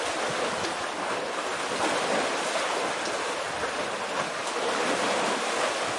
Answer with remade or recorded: recorded